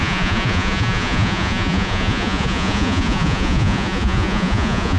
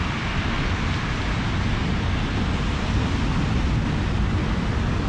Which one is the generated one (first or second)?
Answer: first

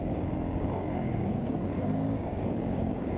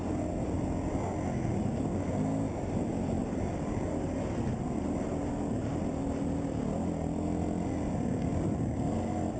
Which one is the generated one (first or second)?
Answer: first